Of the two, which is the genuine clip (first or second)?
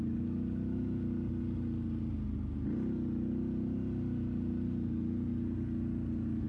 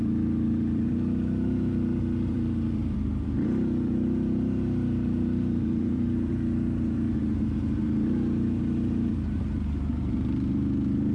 first